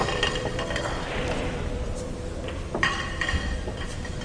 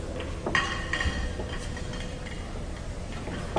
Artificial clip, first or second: first